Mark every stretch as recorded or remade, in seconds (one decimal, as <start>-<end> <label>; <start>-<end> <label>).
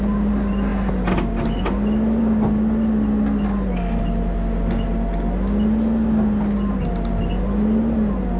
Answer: 0.0-8.4 recorded